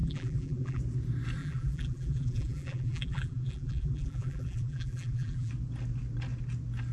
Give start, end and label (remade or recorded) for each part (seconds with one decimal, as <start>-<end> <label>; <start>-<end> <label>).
0.0-0.8 remade; 0.8-1.4 recorded; 1.4-5.5 remade; 5.5-6.9 recorded